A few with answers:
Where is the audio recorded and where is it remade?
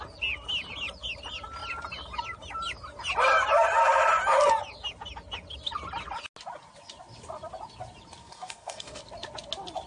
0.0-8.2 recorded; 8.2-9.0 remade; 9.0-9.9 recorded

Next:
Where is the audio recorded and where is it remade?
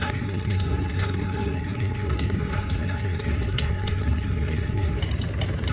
0.0-5.0 remade; 5.0-5.7 recorded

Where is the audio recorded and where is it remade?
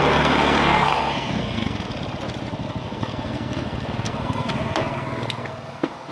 0.0-1.9 remade; 1.9-2.7 recorded; 2.7-6.1 remade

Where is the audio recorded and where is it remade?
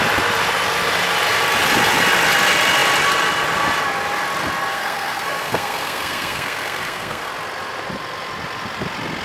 0.0-4.7 recorded; 4.7-7.3 remade; 7.3-9.2 recorded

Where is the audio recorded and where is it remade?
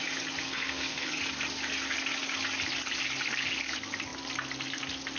0.0-0.4 recorded; 0.4-1.1 remade; 1.1-5.2 recorded